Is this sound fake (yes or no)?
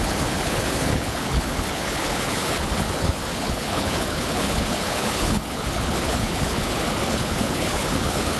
yes